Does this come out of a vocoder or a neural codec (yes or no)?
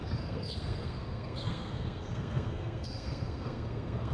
yes